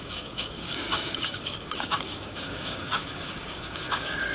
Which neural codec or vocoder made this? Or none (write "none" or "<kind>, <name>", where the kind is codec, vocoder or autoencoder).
codec, DAC